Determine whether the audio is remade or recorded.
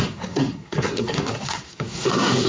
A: remade